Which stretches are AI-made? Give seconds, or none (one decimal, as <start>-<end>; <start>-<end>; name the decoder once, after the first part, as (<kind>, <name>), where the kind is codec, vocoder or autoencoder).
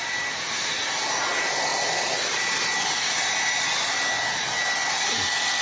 none